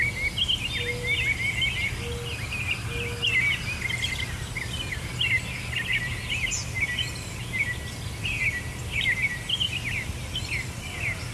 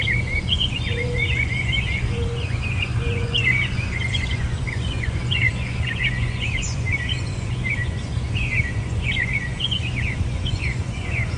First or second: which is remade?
second